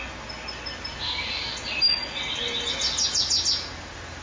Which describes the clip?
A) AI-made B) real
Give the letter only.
B